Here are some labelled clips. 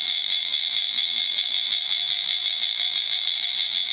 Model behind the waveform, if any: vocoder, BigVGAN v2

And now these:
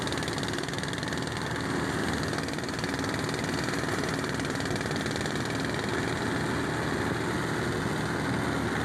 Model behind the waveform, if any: none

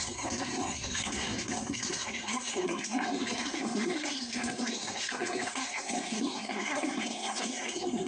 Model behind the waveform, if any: codec, SNAC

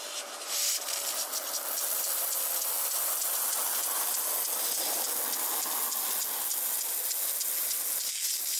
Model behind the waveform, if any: none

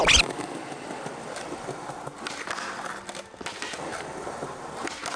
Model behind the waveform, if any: none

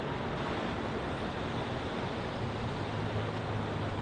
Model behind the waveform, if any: none